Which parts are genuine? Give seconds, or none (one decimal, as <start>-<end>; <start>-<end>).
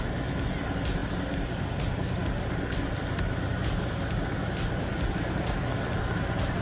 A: 0.0-6.6